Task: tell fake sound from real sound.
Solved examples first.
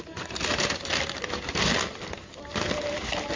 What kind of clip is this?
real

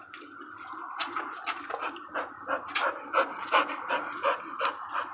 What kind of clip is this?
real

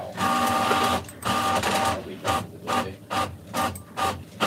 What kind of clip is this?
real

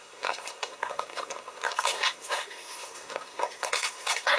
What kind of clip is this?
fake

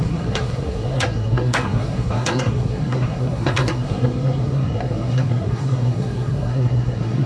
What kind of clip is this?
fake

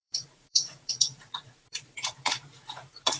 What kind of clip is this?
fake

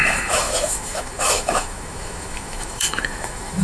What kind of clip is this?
fake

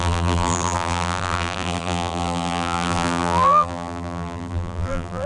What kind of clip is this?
fake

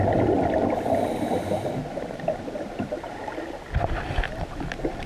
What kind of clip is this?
real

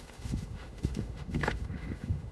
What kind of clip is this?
fake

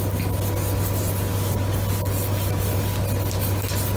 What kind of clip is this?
real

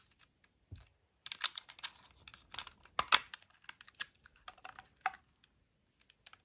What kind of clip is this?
real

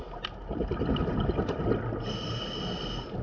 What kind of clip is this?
real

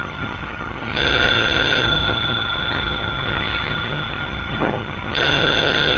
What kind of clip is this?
fake